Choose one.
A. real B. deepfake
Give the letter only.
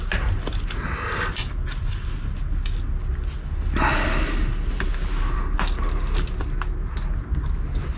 A